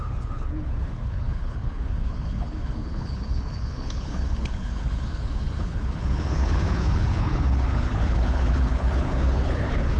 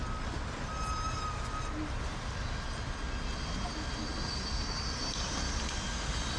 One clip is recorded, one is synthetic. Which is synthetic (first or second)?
first